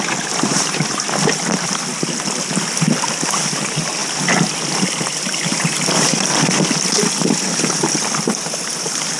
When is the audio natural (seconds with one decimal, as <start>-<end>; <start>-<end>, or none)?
0.0-0.5; 1.4-9.2